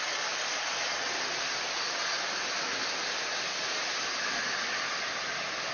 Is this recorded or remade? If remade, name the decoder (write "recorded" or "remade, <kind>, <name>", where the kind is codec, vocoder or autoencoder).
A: recorded